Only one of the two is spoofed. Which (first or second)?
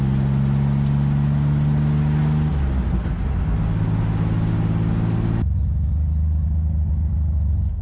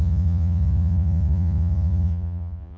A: second